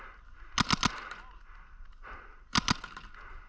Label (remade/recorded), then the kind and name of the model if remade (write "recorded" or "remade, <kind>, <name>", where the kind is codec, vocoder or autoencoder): recorded